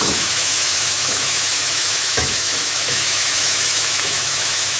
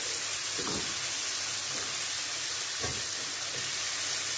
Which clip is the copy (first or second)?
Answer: first